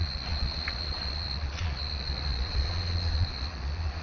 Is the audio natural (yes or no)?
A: no